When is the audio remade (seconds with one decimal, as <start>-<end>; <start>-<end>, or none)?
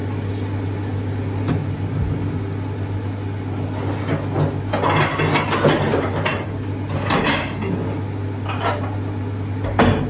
5.9-6.5